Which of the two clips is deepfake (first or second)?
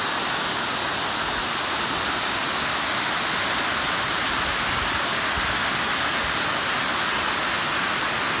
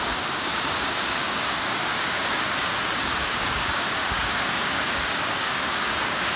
second